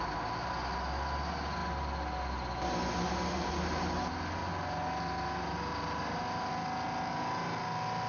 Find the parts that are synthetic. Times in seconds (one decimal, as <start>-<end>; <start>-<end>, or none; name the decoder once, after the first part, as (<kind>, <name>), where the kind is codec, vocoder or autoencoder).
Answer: none